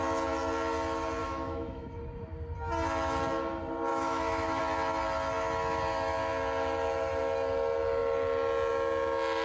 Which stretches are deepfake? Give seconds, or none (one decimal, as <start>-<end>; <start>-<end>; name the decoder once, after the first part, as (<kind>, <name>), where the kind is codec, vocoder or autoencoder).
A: 1.2-2.0 (autoencoder, DAC-VAE); 3.9-4.6